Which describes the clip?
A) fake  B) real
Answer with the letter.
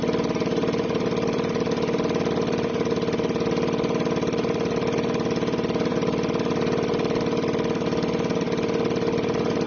B